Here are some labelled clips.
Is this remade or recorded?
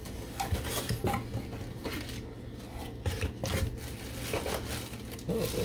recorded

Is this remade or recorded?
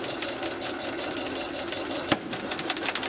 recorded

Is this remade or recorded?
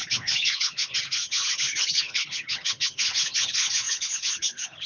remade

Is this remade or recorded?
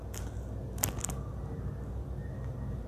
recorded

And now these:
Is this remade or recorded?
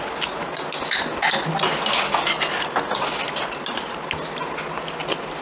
recorded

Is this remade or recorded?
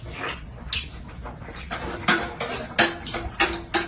recorded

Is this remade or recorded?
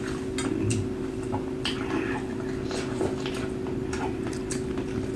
recorded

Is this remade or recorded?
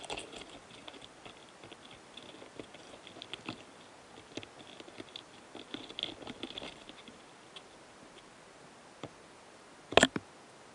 recorded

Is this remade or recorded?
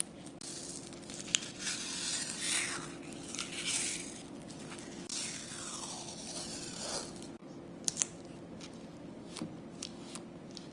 recorded